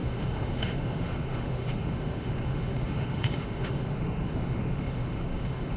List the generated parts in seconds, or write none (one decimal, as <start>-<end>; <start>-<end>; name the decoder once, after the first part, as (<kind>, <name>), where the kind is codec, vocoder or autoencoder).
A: 0.0-5.8 (autoencoder, DAC-VAE)